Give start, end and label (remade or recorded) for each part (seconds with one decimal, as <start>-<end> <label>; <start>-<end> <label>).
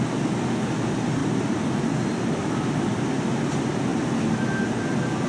0.0-1.2 recorded; 1.2-1.9 remade; 1.9-3.9 recorded; 3.9-4.4 remade; 4.4-5.3 recorded